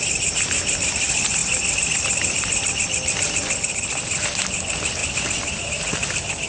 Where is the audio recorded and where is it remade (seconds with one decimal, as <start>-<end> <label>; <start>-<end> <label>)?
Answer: 0.0-6.5 recorded